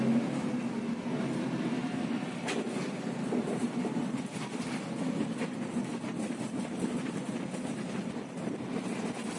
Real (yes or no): yes